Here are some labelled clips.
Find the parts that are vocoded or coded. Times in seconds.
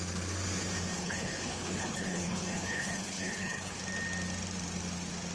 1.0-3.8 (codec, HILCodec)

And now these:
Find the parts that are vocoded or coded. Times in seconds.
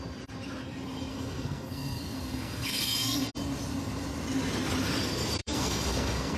1.1-3.3 (codec, SNAC); 5.4-6.4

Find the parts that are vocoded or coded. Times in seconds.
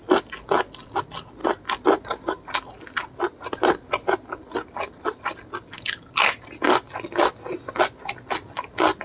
none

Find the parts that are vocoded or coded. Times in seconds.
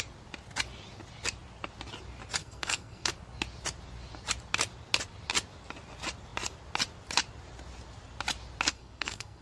2.4-3.1 (codec, SNAC); 8.7-9.4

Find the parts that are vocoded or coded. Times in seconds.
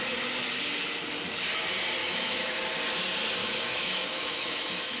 2.0-2.6 (autoencoder, DAC-VAE); 3.4-5.0